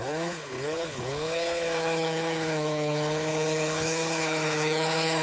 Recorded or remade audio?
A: remade